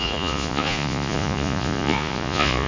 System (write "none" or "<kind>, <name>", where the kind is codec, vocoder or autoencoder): vocoder, Vocos